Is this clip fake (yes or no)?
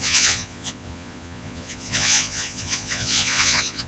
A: yes